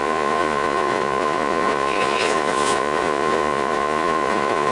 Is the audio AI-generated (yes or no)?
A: yes